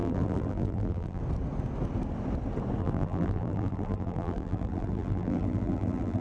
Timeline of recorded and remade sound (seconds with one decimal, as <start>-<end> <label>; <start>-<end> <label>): 0.0-1.2 remade; 1.2-2.8 recorded; 2.8-6.2 remade